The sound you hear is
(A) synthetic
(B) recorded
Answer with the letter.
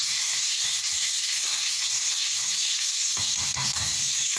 A